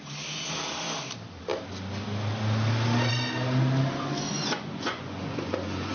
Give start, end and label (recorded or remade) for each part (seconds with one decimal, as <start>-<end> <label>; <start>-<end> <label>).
0.0-4.3 recorded; 4.3-5.9 remade